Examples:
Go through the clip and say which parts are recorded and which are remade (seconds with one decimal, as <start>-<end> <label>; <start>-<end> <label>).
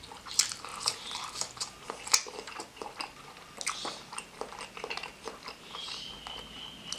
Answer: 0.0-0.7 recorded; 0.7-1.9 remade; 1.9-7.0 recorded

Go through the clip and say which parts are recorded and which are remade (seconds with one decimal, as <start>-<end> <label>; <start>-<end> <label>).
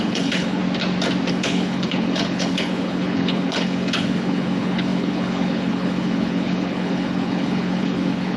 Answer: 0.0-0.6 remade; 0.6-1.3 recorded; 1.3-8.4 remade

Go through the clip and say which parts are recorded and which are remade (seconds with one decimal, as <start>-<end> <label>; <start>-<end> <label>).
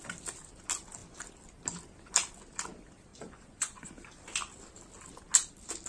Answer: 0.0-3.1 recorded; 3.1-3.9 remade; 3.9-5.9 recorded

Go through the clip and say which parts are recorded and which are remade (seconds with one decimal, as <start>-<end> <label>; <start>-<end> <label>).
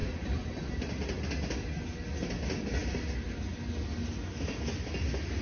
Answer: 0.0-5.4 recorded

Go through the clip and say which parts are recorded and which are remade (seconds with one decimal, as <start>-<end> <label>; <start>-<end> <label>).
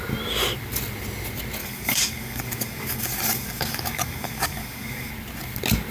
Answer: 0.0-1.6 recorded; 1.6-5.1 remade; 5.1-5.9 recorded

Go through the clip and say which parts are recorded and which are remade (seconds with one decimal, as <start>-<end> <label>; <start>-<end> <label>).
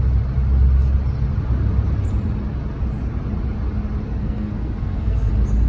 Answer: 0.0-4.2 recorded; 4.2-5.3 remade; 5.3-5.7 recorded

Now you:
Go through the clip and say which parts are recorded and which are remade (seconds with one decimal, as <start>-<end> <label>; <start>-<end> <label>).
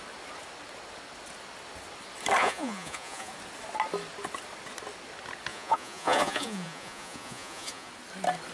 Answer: 0.0-2.4 recorded; 2.4-3.3 remade; 3.3-5.5 recorded; 5.5-7.9 remade; 7.9-8.5 recorded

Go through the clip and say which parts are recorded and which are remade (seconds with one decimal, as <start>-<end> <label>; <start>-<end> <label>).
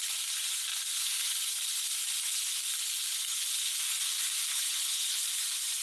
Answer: 0.0-4.5 recorded; 4.5-5.2 remade; 5.2-5.8 recorded